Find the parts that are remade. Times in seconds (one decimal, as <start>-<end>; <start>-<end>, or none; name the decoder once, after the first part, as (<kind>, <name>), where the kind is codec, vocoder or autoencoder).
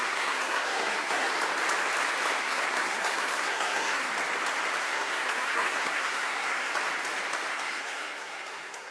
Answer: 0.0-1.3 (codec, SNAC); 2.4-4.1; 4.8-6.7; 7.5-8.9